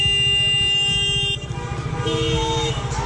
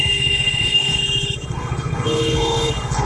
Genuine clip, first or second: first